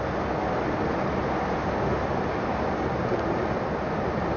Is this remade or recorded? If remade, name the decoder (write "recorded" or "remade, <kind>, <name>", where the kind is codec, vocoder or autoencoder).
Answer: recorded